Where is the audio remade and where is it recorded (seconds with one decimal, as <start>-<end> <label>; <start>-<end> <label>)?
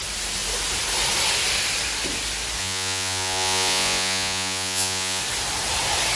0.0-2.6 recorded; 2.6-5.2 remade; 5.2-6.2 recorded